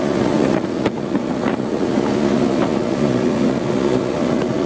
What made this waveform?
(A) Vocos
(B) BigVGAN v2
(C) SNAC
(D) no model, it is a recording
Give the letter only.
A